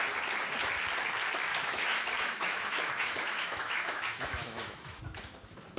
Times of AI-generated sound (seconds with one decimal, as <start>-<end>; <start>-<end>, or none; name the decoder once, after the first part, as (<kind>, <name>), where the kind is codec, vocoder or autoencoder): 1.5-5.0 (autoencoder, DAC-VAE)